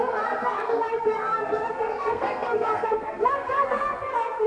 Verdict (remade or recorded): remade